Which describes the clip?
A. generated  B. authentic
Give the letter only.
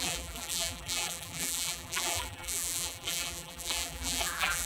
A